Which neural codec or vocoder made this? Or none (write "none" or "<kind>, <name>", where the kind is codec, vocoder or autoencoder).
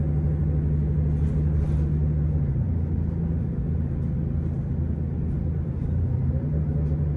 none